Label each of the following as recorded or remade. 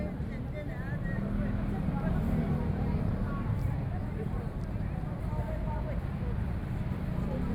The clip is recorded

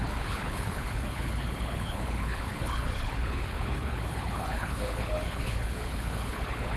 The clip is remade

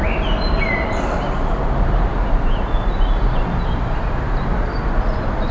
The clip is recorded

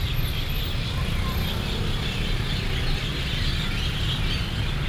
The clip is recorded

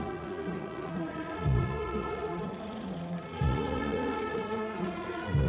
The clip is remade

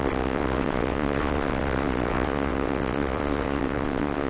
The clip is remade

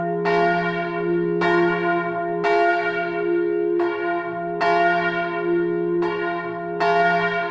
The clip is recorded